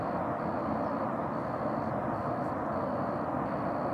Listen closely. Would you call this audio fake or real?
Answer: real